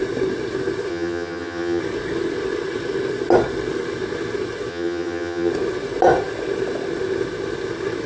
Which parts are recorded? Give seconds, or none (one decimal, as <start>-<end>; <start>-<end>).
0.0-0.9; 1.8-4.7; 5.5-8.1